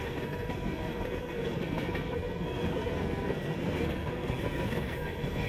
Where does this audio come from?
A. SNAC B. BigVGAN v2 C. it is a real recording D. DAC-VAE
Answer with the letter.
A